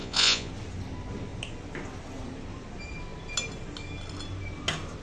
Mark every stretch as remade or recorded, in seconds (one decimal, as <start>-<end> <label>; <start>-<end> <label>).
0.0-0.5 remade; 0.5-5.0 recorded